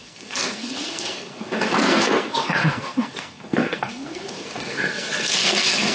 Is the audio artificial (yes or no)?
yes